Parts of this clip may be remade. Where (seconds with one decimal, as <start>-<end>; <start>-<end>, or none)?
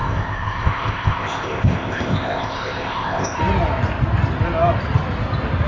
0.0-3.4